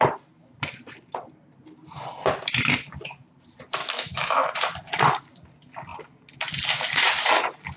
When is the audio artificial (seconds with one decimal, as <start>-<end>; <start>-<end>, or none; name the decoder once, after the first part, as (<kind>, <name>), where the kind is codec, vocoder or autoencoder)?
3.8-4.5 (autoencoder, DAC-VAE)